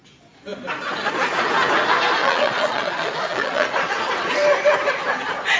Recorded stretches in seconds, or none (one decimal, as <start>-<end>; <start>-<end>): 0.0-2.2; 3.7-5.6